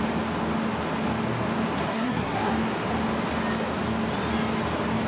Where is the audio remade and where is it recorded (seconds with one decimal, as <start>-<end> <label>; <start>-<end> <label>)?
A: 0.0-1.9 recorded; 1.9-2.5 remade; 2.5-5.1 recorded